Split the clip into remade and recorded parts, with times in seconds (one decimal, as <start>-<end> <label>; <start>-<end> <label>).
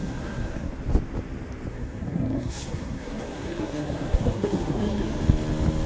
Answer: 0.0-0.7 remade; 0.7-1.7 recorded; 1.7-5.2 remade; 5.2-5.9 recorded